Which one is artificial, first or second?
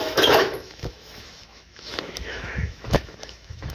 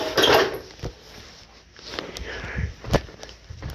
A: first